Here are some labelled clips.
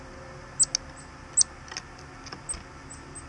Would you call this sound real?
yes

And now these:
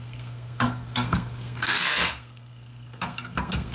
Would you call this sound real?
no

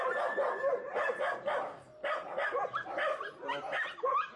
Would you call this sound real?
yes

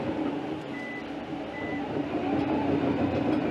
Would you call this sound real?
yes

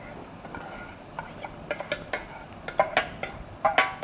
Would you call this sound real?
yes